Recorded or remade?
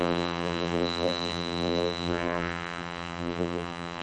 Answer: remade